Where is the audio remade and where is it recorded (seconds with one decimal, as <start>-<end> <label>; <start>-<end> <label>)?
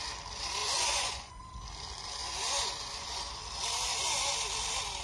0.0-0.6 recorded; 0.6-1.4 remade; 1.4-2.2 recorded; 2.2-3.4 remade; 3.4-5.0 recorded